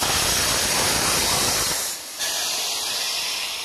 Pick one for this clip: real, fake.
real